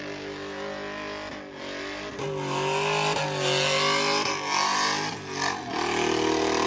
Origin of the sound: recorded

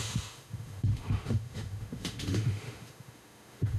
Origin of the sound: remade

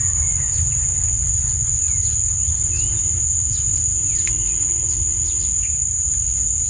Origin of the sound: recorded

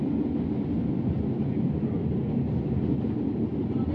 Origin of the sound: recorded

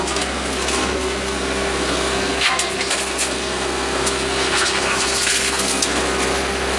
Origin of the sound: remade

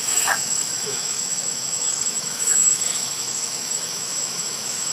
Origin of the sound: remade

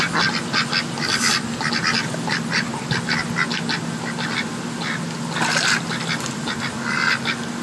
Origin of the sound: recorded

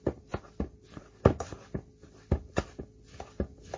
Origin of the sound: recorded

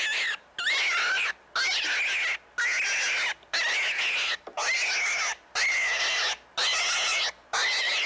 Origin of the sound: recorded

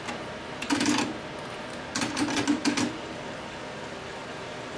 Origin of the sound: recorded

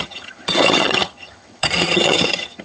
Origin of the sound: remade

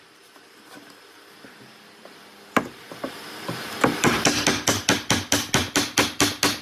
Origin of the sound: recorded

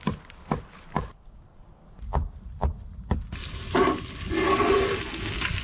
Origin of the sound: recorded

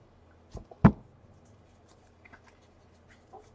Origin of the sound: recorded